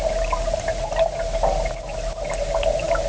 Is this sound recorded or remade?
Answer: recorded